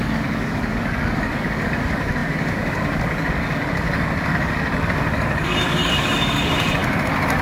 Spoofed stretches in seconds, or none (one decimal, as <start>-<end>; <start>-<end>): 0.0-6.8